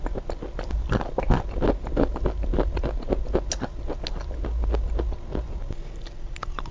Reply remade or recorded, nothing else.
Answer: recorded